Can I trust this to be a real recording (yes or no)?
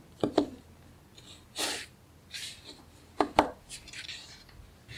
yes